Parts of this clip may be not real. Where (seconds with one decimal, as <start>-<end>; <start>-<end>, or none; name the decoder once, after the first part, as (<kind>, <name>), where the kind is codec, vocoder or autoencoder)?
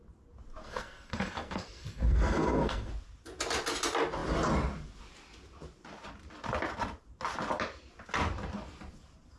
0.6-2.9 (codec, SNAC)